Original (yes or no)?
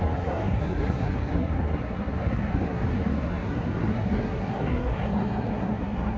no